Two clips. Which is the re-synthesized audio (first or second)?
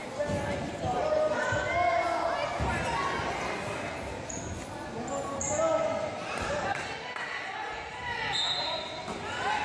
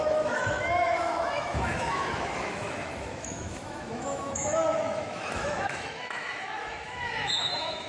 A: second